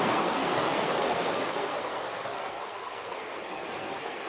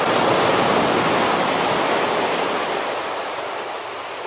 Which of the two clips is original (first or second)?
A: second